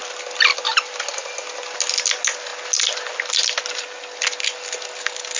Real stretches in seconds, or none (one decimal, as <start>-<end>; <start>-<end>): 0.0-5.4

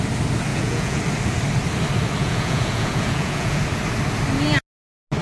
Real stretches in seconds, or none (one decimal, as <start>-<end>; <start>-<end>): 0.0-0.5; 1.0-2.2; 3.6-5.2

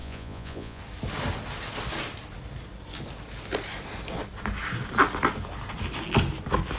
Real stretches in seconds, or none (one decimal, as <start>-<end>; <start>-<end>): 0.8-6.8

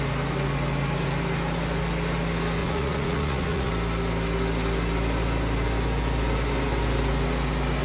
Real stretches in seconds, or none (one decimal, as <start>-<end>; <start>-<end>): 0.0-2.6; 3.7-7.8

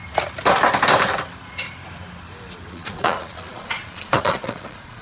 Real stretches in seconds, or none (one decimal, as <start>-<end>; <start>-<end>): 0.0-2.7

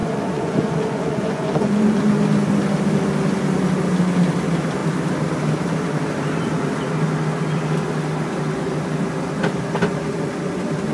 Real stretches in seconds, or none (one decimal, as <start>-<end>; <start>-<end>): 2.0-10.9